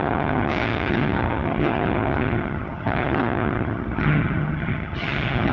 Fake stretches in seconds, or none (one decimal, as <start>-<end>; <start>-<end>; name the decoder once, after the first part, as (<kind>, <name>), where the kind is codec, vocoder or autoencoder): 0.0-5.5 (vocoder, HiFi-GAN)